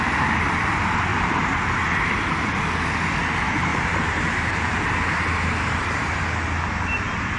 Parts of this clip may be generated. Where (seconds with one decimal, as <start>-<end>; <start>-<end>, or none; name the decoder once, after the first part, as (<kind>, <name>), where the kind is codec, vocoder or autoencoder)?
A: 1.1-2.6 (vocoder, BigVGAN v2); 3.7-4.7